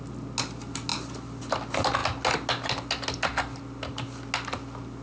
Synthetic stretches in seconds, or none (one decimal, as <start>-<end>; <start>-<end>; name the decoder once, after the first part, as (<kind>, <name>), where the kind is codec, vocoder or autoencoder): none